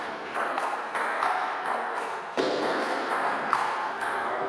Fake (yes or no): yes